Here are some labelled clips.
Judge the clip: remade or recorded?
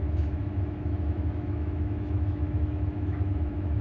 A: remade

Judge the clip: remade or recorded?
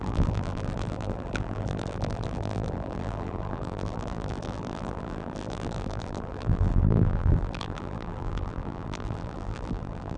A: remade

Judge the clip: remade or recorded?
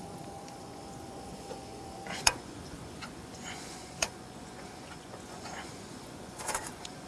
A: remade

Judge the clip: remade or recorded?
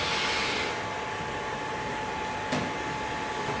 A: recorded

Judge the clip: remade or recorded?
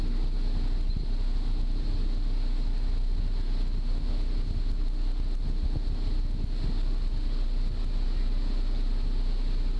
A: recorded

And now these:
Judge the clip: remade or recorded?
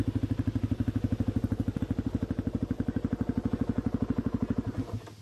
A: recorded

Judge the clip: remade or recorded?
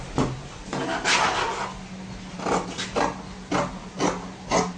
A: recorded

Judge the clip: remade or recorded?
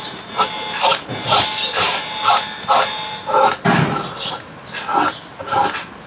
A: remade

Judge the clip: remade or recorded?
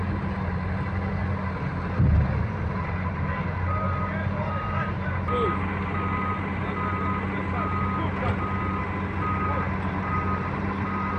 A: recorded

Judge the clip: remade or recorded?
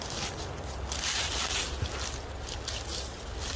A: recorded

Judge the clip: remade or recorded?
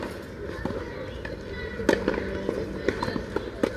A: recorded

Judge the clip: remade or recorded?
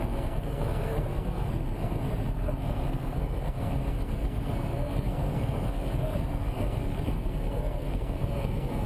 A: remade